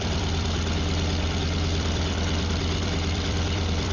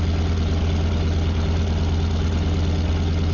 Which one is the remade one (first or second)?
first